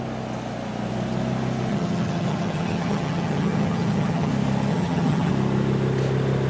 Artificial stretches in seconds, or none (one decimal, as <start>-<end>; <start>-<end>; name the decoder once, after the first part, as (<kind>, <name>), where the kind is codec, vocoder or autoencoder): 1.7-4.3 (vocoder, HiFi-GAN); 4.7-5.3